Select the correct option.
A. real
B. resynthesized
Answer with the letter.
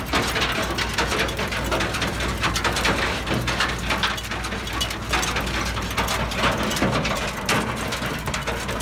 A